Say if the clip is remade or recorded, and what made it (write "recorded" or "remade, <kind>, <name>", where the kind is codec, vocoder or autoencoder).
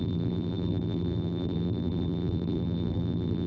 remade, vocoder, BigVGAN v2